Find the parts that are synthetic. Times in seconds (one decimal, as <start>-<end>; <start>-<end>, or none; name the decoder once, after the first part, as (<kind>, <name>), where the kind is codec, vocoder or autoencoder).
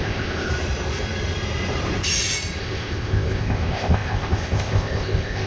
0.0-0.5 (codec, ZipCodec); 2.6-5.5